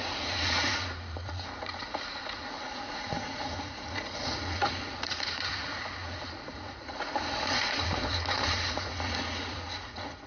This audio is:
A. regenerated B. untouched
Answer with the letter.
A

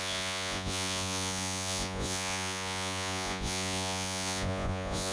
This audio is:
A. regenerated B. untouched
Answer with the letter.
A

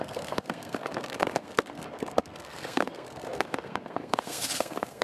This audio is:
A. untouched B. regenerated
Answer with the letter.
B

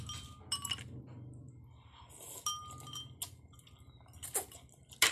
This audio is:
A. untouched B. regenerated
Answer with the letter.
A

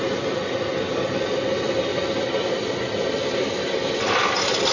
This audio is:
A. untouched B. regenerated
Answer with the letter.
A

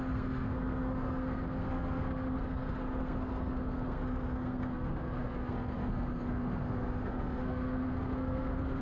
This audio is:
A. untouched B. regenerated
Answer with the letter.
B